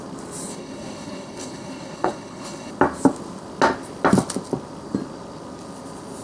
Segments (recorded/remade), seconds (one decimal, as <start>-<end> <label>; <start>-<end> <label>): 0.0-0.5 recorded; 0.5-2.7 remade; 2.7-6.2 recorded